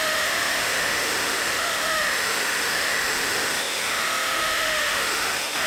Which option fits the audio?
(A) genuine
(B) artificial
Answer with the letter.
B